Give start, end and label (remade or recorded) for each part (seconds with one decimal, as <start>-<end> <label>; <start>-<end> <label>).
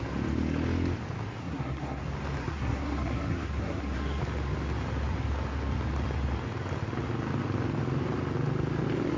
0.0-1.4 recorded; 1.4-2.0 remade; 2.0-2.4 recorded; 2.4-4.2 remade; 4.2-9.2 recorded